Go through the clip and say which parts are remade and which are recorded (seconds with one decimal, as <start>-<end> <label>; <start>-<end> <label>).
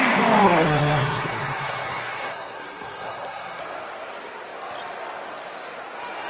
0.0-0.4 recorded; 0.4-3.6 remade; 3.6-6.3 recorded